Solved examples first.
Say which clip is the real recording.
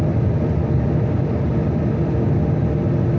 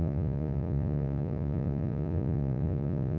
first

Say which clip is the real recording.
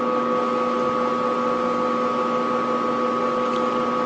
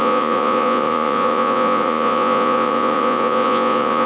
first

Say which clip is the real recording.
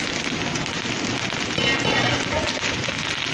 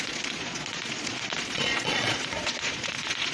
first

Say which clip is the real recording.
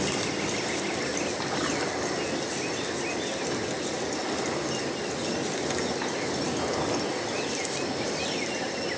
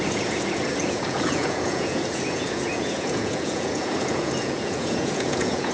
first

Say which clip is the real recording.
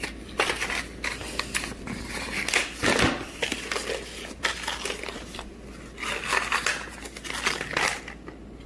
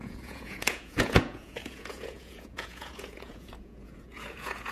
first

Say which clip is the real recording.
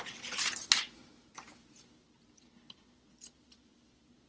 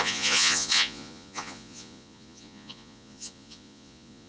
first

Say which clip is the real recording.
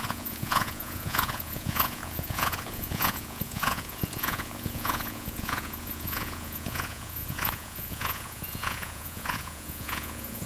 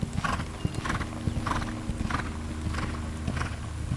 second